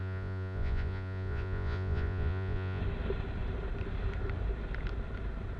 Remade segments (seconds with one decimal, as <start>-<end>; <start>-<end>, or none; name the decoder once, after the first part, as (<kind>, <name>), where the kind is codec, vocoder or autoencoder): 0.0-2.8 (vocoder, Vocos)